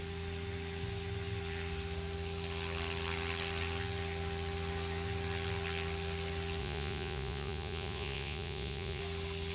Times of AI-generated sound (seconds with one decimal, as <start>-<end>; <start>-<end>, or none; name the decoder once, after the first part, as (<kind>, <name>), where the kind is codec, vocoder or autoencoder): 6.6-9.0 (vocoder, Vocos)